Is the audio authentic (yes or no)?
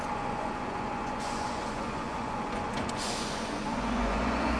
no